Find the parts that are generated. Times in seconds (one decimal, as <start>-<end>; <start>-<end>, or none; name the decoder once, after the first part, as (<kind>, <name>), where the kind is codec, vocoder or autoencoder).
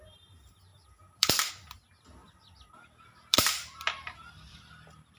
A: 0.7-1.5 (vocoder, BigVGAN v2); 2.2-4.7